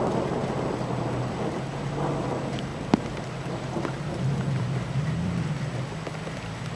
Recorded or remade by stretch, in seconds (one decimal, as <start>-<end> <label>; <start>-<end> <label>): 0.0-2.7 recorded; 2.7-5.8 remade; 5.8-6.8 recorded

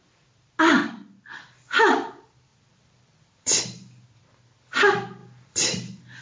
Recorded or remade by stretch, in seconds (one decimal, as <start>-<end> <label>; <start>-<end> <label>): 0.0-0.8 recorded; 0.8-1.4 remade; 1.4-2.5 recorded; 2.5-3.6 remade; 3.6-5.2 recorded; 5.2-6.2 remade

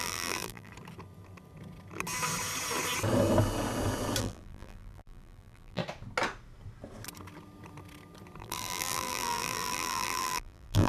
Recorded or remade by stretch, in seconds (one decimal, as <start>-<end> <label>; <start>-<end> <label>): 0.0-0.7 remade; 0.7-4.2 recorded; 4.2-5.8 remade; 5.8-8.4 recorded; 8.4-10.9 remade

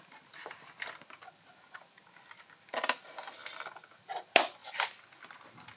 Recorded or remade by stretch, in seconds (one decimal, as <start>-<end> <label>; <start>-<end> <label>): 0.0-5.8 recorded

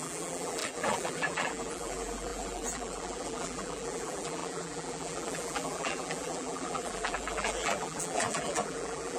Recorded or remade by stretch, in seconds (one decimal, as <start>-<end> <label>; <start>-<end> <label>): 0.0-9.2 remade

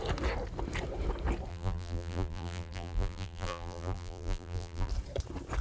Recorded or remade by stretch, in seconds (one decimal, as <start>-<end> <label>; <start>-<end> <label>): 0.0-1.5 recorded; 1.5-4.9 remade; 4.9-5.6 recorded